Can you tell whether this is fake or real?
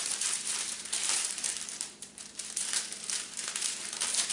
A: fake